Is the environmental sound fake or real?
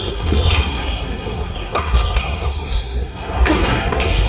fake